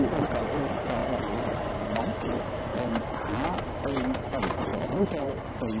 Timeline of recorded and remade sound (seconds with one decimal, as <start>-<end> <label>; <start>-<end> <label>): 0.0-2.7 remade; 2.7-3.6 recorded; 3.6-4.7 remade; 4.7-5.2 recorded; 5.2-5.8 remade